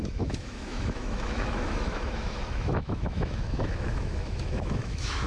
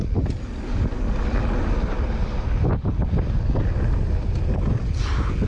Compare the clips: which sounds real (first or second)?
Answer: second